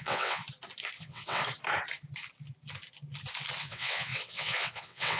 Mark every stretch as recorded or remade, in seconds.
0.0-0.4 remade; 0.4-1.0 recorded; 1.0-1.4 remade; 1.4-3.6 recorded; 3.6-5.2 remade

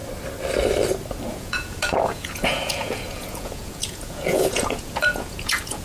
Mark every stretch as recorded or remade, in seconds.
0.0-1.3 recorded; 1.3-5.8 remade

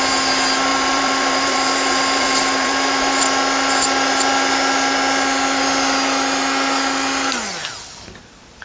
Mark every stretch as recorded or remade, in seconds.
0.0-0.7 recorded; 0.7-3.2 remade; 3.2-8.6 recorded

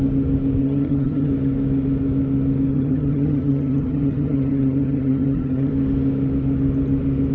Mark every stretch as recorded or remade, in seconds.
0.0-0.6 recorded; 0.6-1.3 remade; 1.3-2.7 recorded; 2.7-5.7 remade; 5.7-7.3 recorded

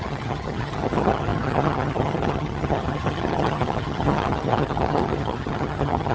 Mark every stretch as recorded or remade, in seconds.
0.0-6.1 remade